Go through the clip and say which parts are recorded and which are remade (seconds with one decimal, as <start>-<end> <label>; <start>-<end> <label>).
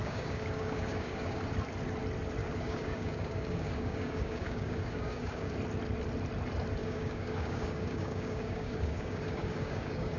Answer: 0.0-1.4 remade; 1.4-2.4 recorded; 2.4-5.5 remade; 5.5-6.8 recorded; 6.8-10.2 remade